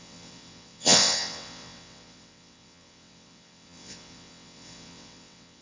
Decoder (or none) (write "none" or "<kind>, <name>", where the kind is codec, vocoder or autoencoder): vocoder, WaveNeXt